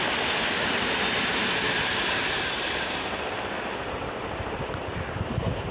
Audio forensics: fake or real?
fake